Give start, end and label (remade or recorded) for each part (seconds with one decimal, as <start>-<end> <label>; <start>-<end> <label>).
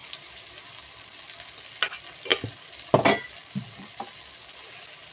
0.0-0.7 remade; 0.7-5.1 recorded